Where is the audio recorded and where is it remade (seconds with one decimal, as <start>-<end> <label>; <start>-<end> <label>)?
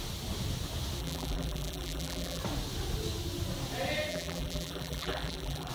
0.0-1.0 recorded; 1.0-2.4 remade; 2.4-4.1 recorded; 4.1-5.7 remade